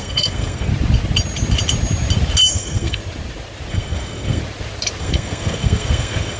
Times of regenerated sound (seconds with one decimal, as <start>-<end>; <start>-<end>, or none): 0.0-0.7; 2.5-3.0; 3.7-4.4; 5.0-6.4